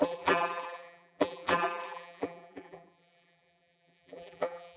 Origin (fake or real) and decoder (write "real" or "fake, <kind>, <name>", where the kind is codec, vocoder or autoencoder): fake, vocoder, BigVGAN v2